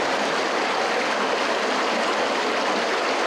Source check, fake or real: real